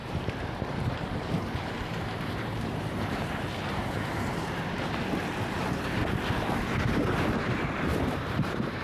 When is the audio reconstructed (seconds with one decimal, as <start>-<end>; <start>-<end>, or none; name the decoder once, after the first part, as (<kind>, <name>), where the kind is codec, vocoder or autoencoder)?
0.0-6.0 (vocoder, BigVGAN v2); 6.8-8.8

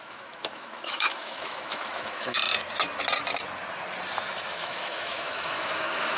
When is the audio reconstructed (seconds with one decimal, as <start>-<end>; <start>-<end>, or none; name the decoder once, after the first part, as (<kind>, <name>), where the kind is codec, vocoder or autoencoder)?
0.0-2.4 (autoencoder, DAC-VAE); 4.5-6.2

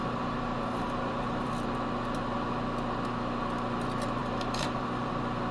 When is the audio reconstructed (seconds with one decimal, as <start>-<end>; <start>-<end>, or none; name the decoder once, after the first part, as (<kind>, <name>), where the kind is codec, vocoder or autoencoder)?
0.0-1.5 (vocoder, BigVGAN v2); 4.2-5.1

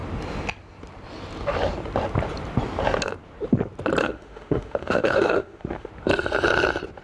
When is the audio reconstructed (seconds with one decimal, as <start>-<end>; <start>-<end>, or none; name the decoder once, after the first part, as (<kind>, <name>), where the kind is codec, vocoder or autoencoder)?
4.0-5.9 (autoencoder, DAC-VAE)

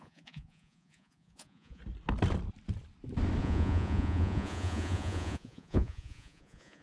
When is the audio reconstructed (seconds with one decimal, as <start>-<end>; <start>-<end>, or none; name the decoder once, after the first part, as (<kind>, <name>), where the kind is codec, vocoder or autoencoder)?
0.0-1.8 (vocoder, Vocos); 3.4-6.8

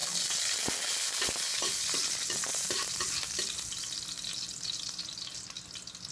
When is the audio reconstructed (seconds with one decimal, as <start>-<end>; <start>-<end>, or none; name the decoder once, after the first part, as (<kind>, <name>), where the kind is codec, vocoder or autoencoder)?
2.5-3.4 (vocoder, BigVGAN v2)

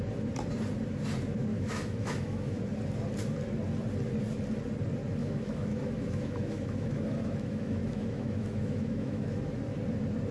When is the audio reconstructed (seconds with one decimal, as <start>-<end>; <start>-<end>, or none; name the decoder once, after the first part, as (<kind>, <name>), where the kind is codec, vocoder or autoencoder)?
1.5-2.6 (autoencoder, DAC-VAE); 5.2-9.5